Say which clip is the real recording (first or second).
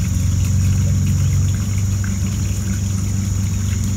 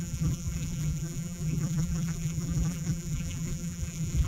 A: first